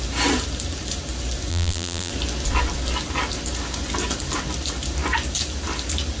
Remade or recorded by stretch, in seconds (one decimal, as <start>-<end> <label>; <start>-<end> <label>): 0.0-1.5 recorded; 1.5-2.1 remade; 2.1-6.2 recorded